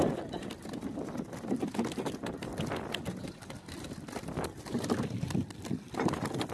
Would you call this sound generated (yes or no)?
no